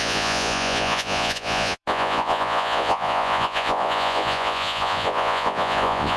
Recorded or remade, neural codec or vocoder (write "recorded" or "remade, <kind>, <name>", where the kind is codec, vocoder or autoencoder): remade, vocoder, Vocos